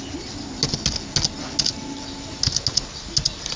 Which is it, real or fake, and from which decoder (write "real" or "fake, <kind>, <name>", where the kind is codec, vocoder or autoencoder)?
real